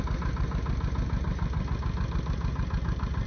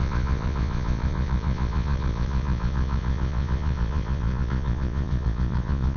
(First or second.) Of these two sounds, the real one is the first